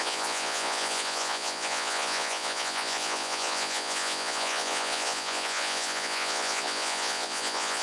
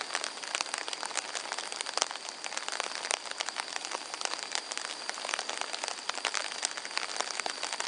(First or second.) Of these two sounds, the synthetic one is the first